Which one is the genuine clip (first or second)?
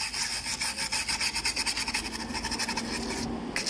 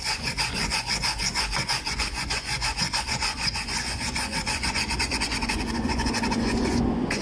first